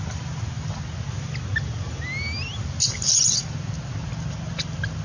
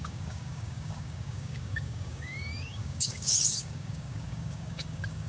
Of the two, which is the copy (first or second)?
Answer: second